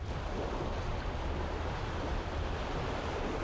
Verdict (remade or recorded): recorded